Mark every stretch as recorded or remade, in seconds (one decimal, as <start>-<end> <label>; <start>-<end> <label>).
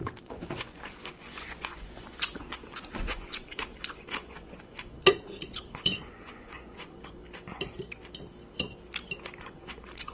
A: 0.0-7.2 remade; 7.2-9.4 recorded; 9.4-10.1 remade